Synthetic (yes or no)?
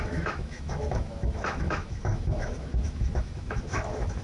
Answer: yes